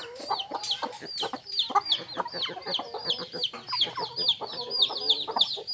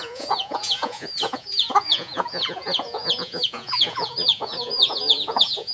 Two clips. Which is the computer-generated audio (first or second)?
second